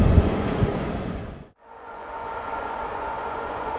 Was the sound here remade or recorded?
remade